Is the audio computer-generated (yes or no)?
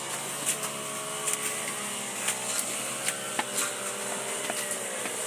no